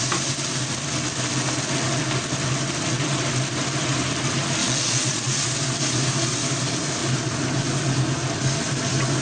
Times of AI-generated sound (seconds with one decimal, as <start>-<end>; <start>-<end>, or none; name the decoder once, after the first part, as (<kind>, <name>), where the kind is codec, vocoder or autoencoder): 4.6-5.4 (vocoder, Vocos)